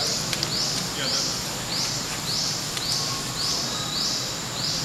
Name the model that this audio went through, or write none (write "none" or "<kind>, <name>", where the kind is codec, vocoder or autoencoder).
none